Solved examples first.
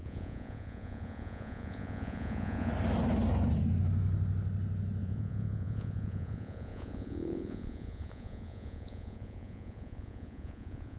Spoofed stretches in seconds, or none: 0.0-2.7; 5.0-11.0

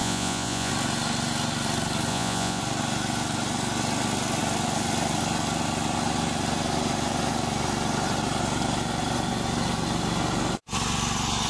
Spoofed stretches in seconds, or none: 0.0-0.7; 2.1-2.6

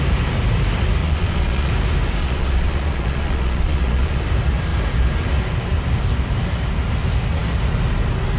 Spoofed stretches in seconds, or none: 1.0-1.7; 2.2-4.2

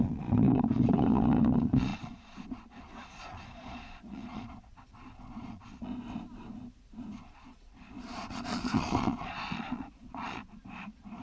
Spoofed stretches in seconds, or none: 0.0-5.9; 7.2-11.2

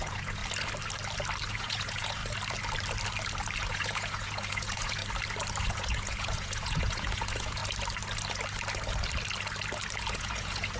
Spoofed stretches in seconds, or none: 0.0-0.4; 1.5-2.2; 3.7-5.0; 5.6-7.6; 10.1-10.8

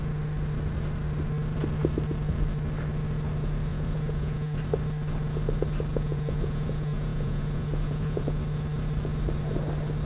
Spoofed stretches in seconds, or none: 3.7-4.6; 5.9-8.4